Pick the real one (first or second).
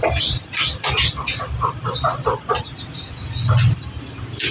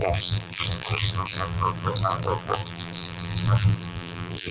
first